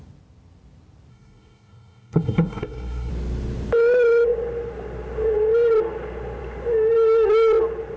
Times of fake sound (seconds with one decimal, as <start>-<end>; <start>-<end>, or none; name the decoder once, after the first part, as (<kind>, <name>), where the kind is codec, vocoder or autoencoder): 1.1-3.1 (codec, SNAC)